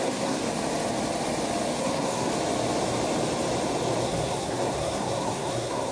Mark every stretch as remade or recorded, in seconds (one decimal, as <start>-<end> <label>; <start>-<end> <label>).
0.0-0.4 remade; 0.4-1.8 recorded; 1.8-2.3 remade; 2.3-4.0 recorded; 4.0-5.9 remade

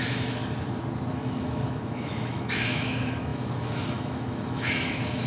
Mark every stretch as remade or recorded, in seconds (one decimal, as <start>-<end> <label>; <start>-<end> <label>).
0.0-0.4 remade; 0.4-1.1 recorded; 1.1-5.3 remade

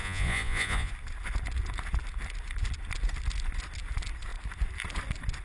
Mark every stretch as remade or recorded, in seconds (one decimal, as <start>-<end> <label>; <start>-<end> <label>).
0.0-0.9 remade; 0.9-5.4 recorded

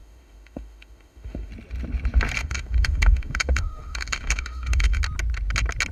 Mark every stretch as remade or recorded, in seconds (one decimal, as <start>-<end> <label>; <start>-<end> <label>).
0.0-1.5 remade; 1.5-2.4 recorded; 2.4-5.0 remade; 5.0-5.9 recorded

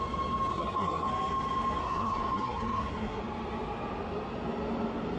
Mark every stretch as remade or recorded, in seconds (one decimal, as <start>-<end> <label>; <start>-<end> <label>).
0.0-0.5 recorded; 0.5-1.1 remade; 1.1-1.8 recorded; 1.8-3.2 remade; 3.2-5.2 recorded

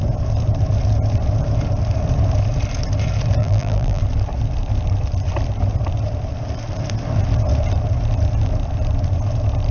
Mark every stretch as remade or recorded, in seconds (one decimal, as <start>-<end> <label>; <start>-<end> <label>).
0.0-3.4 recorded; 3.4-4.0 remade; 4.0-9.7 recorded